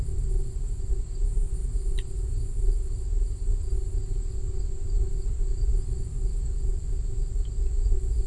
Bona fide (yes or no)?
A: yes